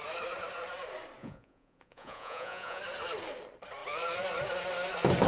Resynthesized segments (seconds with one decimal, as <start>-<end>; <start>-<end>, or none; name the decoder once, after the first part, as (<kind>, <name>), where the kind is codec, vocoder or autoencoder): 1.2-2.8 (vocoder, Vocos)